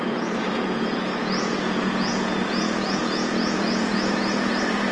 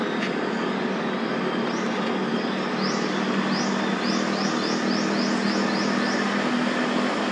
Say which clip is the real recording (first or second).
second